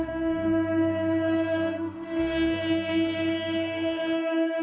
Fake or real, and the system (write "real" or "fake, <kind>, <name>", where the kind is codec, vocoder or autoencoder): fake, codec, SNAC